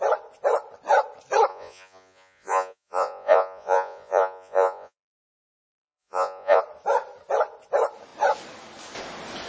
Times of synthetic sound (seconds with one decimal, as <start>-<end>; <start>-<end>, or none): 1.5-6.6